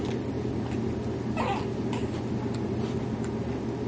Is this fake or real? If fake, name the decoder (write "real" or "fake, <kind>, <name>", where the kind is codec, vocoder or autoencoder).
real